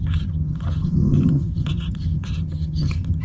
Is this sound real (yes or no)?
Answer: no